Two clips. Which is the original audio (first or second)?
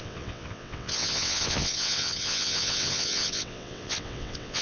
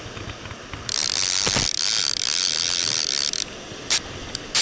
second